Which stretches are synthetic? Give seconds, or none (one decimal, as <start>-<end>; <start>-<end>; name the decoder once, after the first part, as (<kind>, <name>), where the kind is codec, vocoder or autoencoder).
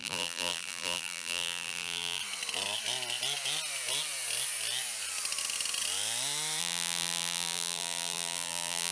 0.0-2.2 (vocoder, BigVGAN v2); 6.6-8.9